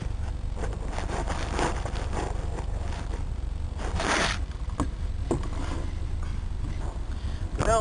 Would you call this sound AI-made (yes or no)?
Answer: no